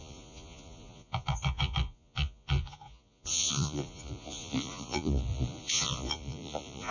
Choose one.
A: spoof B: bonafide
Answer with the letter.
A